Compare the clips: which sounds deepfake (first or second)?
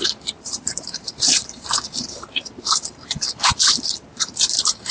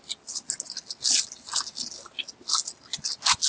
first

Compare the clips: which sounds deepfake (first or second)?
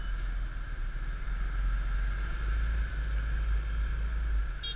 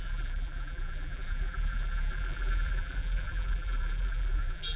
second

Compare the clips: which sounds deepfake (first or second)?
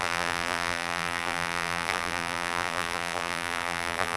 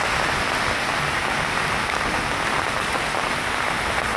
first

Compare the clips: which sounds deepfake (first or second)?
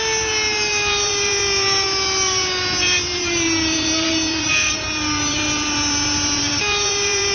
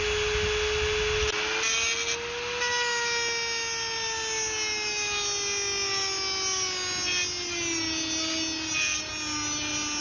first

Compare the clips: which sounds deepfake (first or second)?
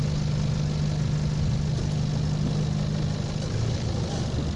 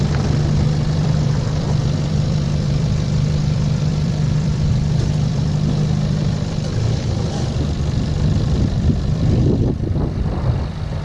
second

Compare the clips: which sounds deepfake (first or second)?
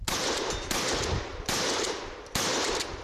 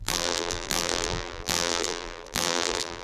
second